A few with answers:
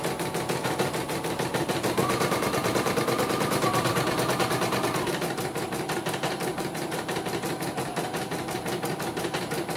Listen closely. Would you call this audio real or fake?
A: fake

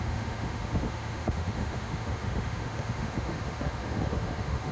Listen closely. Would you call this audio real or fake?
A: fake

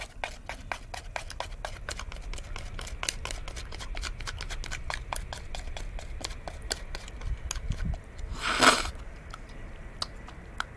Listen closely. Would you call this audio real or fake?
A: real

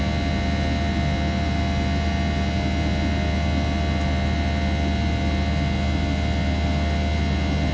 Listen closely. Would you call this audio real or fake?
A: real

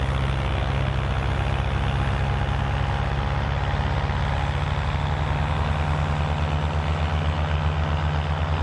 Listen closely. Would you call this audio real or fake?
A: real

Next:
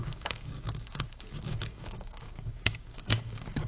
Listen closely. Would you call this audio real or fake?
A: fake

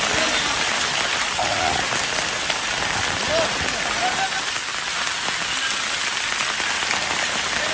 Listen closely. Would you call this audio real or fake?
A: real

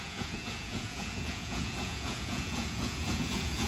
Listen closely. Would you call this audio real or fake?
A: fake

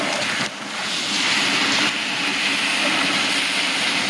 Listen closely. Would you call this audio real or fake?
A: real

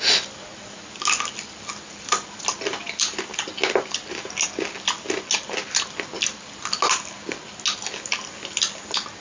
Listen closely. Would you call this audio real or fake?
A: real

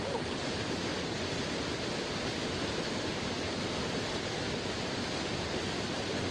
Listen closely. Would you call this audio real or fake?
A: real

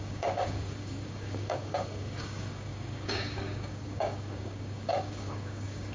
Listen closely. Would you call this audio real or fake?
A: fake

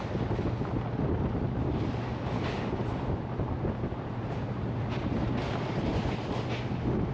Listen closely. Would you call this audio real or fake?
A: real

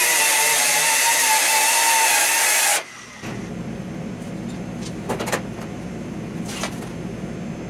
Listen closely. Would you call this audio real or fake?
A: real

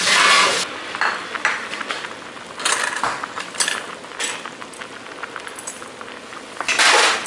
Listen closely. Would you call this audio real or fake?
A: real